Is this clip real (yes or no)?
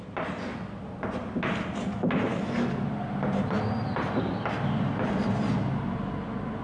yes